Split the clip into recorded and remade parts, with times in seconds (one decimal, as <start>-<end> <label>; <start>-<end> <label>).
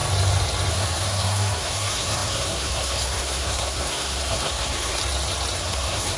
0.0-0.7 recorded; 0.7-5.0 remade; 5.0-5.6 recorded; 5.6-6.2 remade